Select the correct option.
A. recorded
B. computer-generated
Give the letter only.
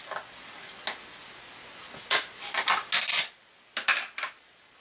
A